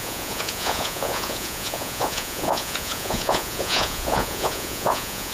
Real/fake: fake